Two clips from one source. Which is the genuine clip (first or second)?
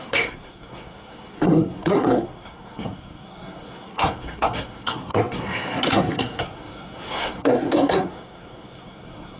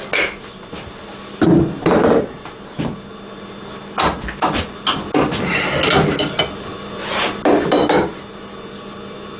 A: second